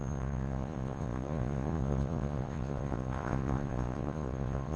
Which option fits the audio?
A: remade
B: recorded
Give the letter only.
A